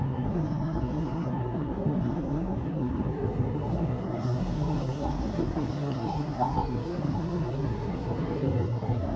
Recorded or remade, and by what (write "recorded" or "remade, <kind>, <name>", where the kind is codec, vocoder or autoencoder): remade, codec, SNAC